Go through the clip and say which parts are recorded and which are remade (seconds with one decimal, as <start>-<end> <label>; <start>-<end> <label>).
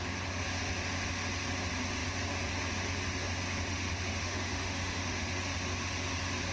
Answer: 0.0-3.7 recorded; 3.7-5.4 remade; 5.4-6.5 recorded